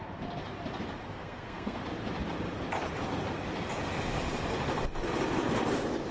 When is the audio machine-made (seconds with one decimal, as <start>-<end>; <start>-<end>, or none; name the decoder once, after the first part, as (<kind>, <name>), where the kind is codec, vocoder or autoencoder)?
1.0-1.8 (codec, SNAC)